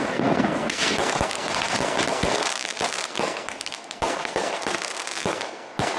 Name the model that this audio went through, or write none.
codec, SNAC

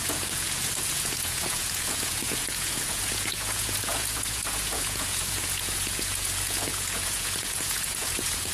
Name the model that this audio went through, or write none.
vocoder, Vocos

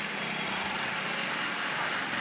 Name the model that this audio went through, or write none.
none